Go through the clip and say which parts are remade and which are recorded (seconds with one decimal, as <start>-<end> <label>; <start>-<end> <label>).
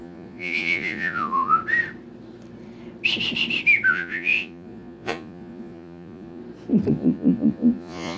0.0-1.6 remade; 1.6-3.9 recorded; 3.9-6.4 remade; 6.4-6.9 recorded; 6.9-8.2 remade